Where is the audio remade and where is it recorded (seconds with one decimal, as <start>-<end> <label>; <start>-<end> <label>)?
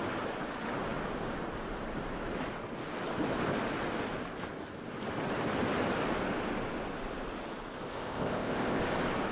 0.0-7.9 recorded; 7.9-8.8 remade; 8.8-9.3 recorded